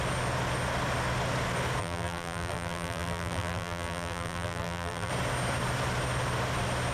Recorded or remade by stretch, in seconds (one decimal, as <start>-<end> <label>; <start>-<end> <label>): 0.0-1.8 recorded; 1.8-5.1 remade; 5.1-6.9 recorded